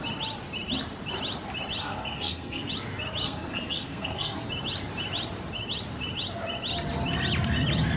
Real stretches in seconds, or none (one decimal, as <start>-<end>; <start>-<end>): 0.0-1.8; 2.7-3.2; 4.5-8.0